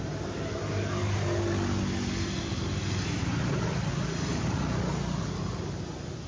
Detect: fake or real real